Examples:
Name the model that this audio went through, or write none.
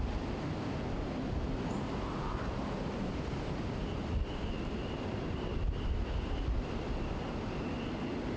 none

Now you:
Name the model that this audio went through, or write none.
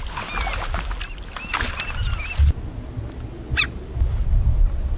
none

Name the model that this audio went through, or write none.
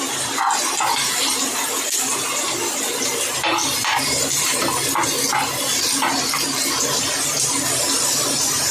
none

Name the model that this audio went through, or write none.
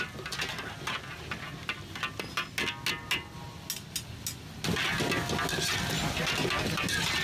none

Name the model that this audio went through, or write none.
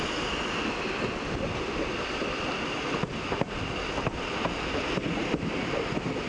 none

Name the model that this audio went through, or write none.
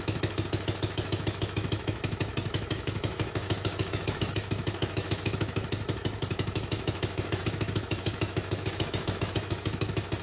autoencoder, DAC-VAE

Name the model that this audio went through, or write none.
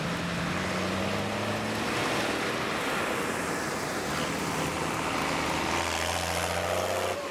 none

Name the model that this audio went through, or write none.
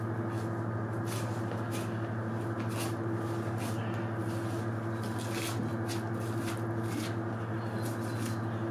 none